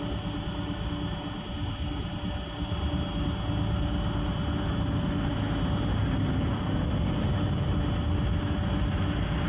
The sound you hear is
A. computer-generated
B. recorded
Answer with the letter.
B